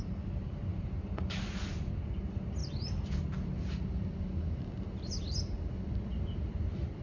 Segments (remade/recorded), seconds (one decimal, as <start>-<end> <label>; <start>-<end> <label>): 0.0-7.0 recorded